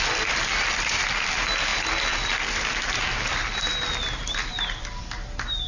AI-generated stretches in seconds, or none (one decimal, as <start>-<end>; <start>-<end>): none